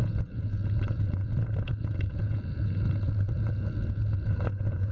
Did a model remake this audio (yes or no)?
yes